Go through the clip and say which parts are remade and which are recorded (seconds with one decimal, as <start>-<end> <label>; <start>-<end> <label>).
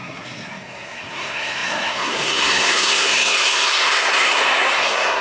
0.0-5.2 remade